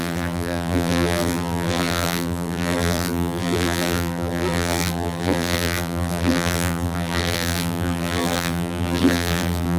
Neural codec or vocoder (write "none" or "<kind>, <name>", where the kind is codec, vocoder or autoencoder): vocoder, BigVGAN v2